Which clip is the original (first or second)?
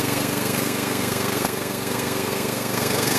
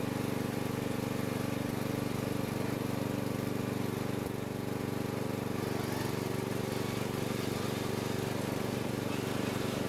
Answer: second